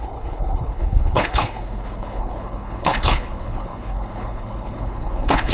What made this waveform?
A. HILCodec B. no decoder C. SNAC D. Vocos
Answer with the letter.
A